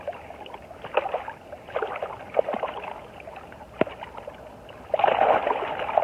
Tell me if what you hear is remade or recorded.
recorded